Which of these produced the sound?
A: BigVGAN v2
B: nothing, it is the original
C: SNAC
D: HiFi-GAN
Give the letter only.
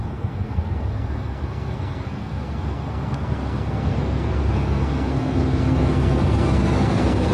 C